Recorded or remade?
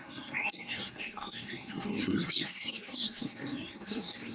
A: remade